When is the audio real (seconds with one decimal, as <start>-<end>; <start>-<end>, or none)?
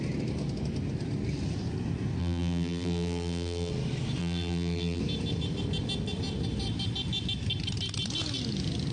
0.0-2.2; 3.7-4.2; 5.0-8.9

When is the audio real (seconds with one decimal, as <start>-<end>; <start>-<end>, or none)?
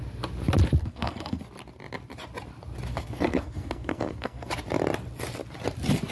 0.0-0.8; 1.4-2.9; 4.5-6.1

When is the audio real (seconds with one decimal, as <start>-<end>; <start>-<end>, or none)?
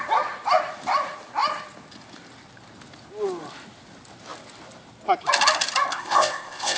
0.0-5.9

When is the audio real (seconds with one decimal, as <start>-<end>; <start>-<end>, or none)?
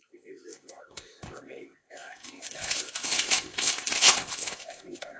none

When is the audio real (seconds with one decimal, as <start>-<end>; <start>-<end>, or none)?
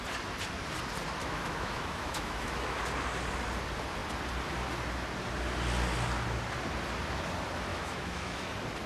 0.0-1.2; 2.8-7.7; 8.5-8.9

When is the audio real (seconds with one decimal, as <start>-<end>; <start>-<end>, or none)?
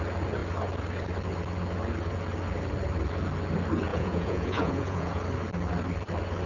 0.0-3.9; 5.2-6.5